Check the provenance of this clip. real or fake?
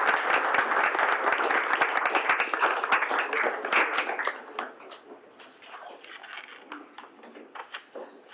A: real